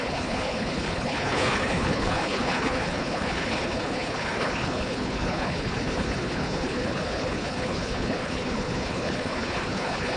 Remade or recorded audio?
remade